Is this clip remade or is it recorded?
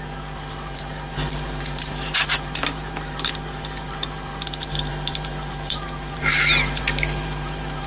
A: remade